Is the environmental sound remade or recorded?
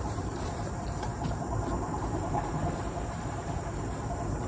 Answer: remade